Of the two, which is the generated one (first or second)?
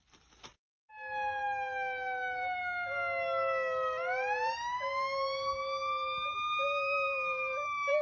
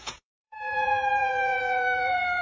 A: second